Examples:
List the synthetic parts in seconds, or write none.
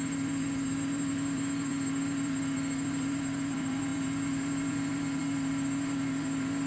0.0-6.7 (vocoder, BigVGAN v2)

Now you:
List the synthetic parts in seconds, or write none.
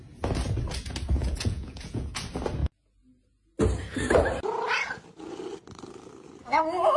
1.2-2.2 (vocoder, Vocos)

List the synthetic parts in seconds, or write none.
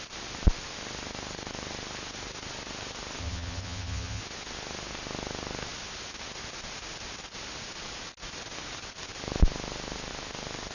3.2-4.2 (vocoder, HiFi-GAN)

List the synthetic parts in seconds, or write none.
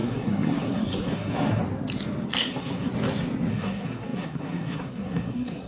0.0-1.6 (codec, SNAC); 2.4-2.9; 3.5-5.7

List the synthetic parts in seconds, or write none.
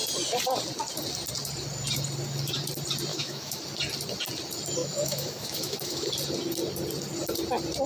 3.1-3.6 (autoencoder, DAC-VAE); 4.8-6.1